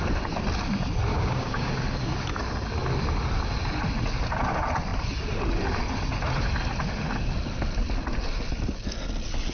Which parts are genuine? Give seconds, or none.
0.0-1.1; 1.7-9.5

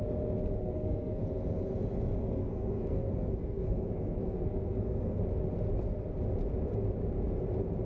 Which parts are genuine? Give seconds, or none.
0.0-0.6; 1.2-2.1; 5.2-7.8

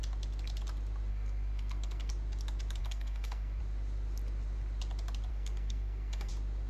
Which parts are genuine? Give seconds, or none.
0.0-1.1; 2.1-2.8; 3.6-5.3; 6.3-6.7

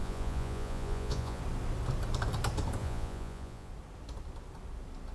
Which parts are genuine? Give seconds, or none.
1.4-2.8; 3.7-5.1

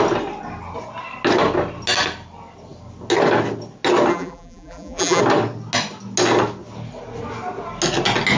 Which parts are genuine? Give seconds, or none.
0.0-4.1; 5.2-8.4

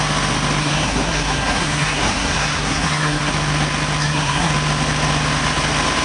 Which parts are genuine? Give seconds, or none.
0.0-0.6; 3.3-4.0; 4.5-6.0